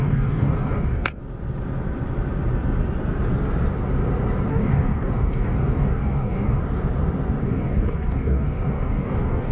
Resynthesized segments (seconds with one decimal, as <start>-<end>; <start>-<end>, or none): 0.0-1.2; 4.5-6.6; 7.4-9.5